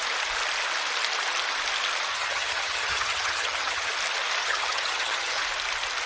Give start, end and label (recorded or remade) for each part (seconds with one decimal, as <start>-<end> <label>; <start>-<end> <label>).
0.0-2.1 recorded; 2.1-3.9 remade; 3.9-4.4 recorded; 4.4-5.4 remade; 5.4-6.1 recorded